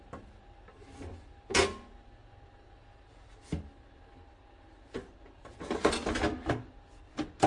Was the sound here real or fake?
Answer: real